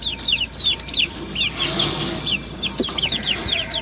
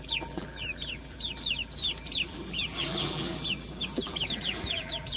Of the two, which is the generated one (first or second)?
second